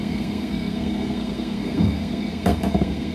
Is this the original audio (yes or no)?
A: no